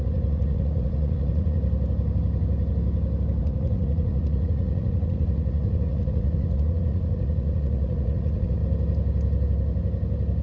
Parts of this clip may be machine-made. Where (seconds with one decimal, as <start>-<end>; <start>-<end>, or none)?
0.0-1.6; 3.4-8.6